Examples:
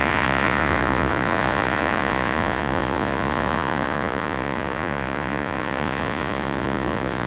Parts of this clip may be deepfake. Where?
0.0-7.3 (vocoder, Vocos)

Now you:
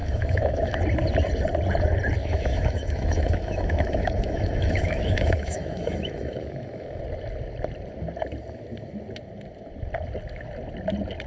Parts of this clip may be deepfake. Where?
0.0-0.8 (autoencoder, DAC-VAE); 2.2-7.0

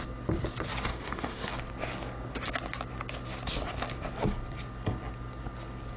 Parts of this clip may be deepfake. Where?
0.9-1.5 (autoencoder, DAC-VAE)

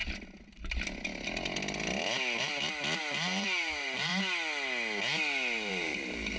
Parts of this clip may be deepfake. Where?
3.0-4.1 (vocoder, BigVGAN v2); 5.7-6.4

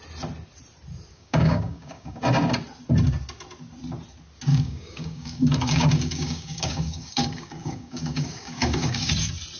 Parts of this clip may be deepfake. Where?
1.1-2.2 (codec, DAC); 4.5-9.1